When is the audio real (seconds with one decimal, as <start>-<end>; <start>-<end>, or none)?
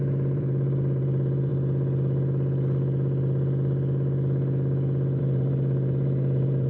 1.5-5.2